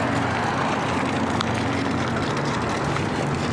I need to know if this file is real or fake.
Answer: real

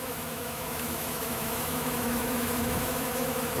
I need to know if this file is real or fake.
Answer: fake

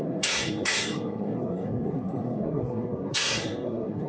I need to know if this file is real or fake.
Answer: fake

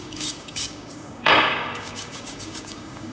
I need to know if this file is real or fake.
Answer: fake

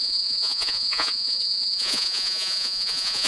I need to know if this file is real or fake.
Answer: fake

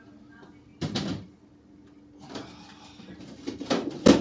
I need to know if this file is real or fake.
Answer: real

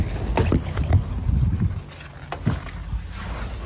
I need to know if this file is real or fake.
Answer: real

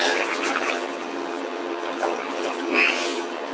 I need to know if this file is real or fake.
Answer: fake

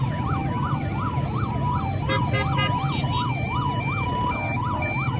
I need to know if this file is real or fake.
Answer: real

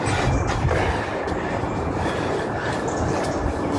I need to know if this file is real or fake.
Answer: real